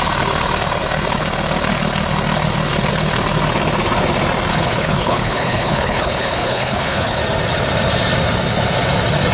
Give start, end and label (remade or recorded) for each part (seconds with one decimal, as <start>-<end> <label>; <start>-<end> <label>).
0.0-4.5 recorded; 4.5-7.2 remade; 7.2-9.3 recorded